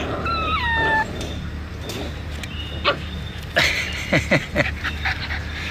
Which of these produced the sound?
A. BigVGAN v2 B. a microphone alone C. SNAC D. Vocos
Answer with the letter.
B